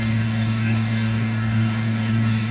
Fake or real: fake